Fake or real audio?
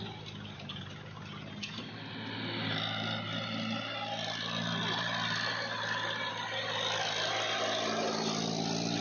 real